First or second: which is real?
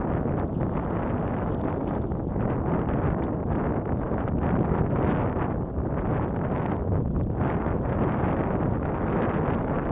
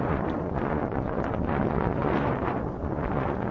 first